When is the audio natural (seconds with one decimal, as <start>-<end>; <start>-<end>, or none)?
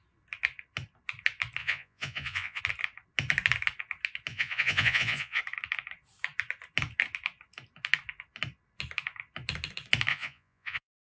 0.0-1.6; 2.6-4.3; 5.4-10.1